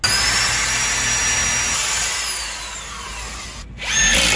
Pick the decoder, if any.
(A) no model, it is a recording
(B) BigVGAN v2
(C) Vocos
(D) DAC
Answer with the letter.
A